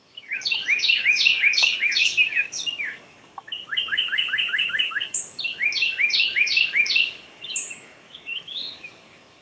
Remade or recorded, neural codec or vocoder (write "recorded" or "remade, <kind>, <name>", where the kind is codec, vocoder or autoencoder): remade, codec, DAC